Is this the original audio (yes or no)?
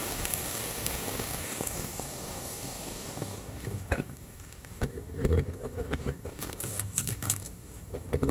no